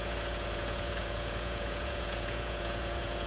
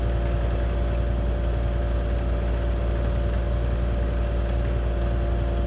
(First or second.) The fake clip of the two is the first